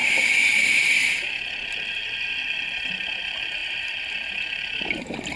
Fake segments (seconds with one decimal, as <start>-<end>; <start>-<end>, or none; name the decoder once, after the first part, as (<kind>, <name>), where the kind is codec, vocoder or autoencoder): 3.6-4.3 (vocoder, BigVGAN v2)